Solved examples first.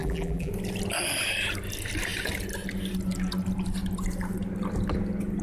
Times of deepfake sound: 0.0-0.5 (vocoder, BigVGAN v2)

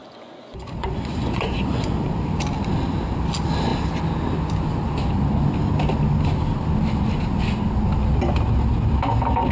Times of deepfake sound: 0.0-1.7 (vocoder, Vocos)

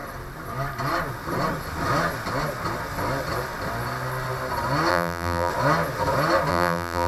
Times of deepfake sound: 4.9-5.5 (vocoder, BigVGAN v2); 6.5-7.1

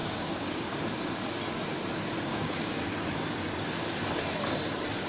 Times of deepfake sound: 0.0-0.7 (codec, DAC); 2.3-2.9